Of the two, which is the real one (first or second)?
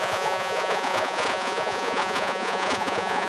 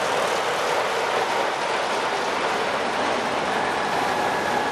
second